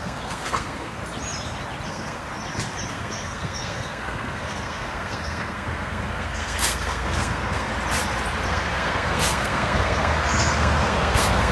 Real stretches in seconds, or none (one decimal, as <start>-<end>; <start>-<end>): 1.0-1.9; 2.3-2.9; 7.7-8.5